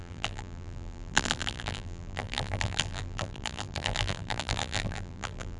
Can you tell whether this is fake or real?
fake